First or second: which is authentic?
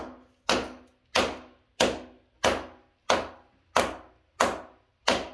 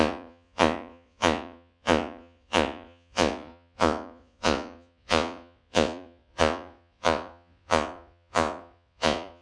first